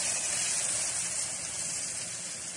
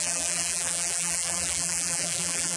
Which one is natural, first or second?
first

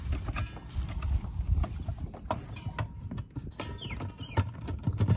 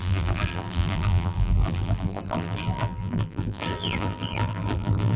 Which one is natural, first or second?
first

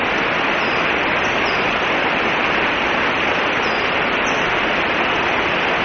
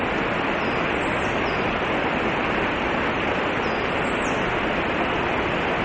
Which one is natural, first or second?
second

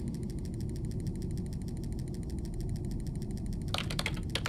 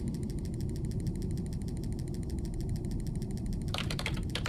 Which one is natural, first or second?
first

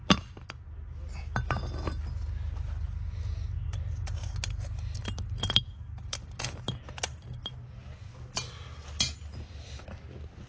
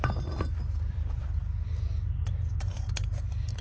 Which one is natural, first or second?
first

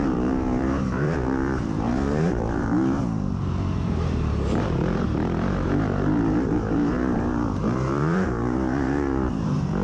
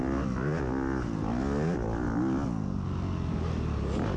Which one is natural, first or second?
second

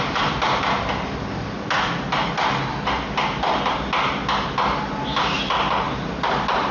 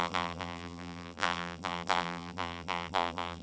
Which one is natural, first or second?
first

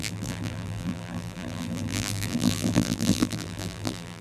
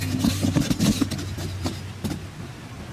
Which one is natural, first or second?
second